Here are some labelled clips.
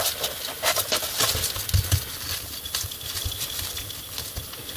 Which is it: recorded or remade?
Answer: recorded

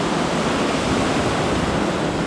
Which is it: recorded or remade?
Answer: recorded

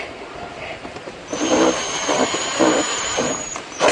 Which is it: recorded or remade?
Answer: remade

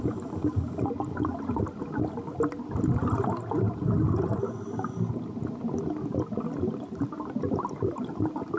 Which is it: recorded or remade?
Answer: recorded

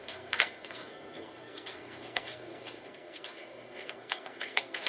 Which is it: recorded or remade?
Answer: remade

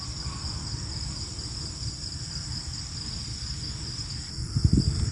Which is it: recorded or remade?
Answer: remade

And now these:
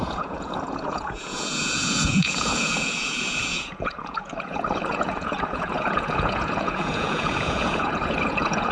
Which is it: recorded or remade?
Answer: remade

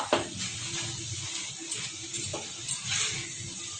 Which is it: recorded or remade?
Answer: recorded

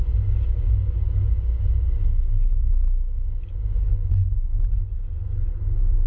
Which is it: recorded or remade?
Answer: recorded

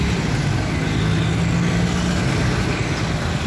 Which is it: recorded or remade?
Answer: recorded